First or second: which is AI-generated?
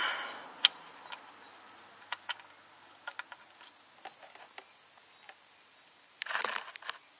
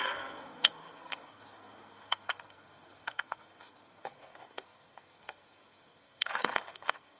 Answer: second